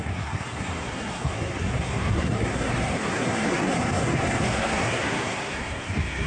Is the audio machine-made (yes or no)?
yes